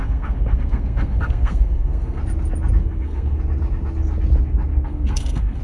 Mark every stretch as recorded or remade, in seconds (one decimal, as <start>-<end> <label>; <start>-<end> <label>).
0.0-2.2 remade; 2.2-2.8 recorded; 2.8-3.4 remade; 3.4-4.7 recorded; 4.7-5.6 remade